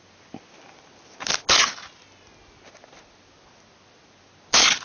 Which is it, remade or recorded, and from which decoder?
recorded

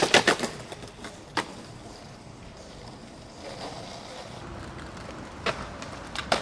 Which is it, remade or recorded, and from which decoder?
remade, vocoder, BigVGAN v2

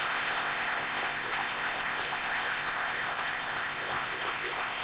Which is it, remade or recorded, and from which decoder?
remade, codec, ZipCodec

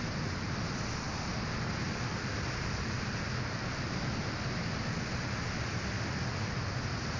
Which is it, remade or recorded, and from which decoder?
recorded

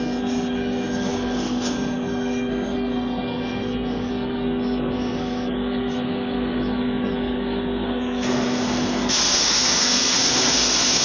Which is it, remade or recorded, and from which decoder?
remade, codec, SNAC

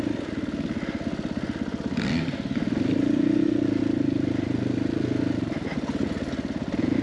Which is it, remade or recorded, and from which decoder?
recorded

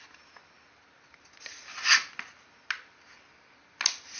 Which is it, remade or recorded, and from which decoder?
recorded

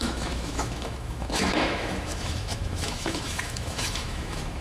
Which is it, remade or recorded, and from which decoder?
remade, autoencoder, DAC-VAE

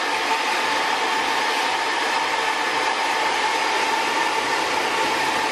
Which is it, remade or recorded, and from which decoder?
recorded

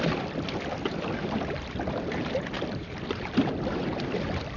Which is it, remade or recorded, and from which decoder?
remade, vocoder, BigVGAN v2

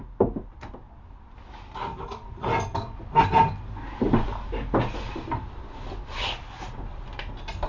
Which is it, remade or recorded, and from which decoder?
recorded